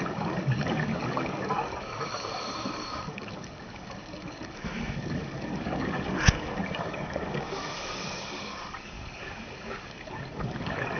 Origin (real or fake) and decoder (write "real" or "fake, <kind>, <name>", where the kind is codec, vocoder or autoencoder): fake, codec, DAC